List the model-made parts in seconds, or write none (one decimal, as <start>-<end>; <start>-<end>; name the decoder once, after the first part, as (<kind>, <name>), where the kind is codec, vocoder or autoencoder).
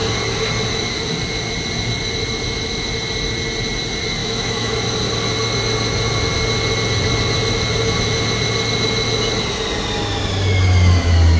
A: 4.2-4.8 (autoencoder, DAC-VAE)